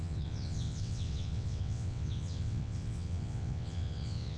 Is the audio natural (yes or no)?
no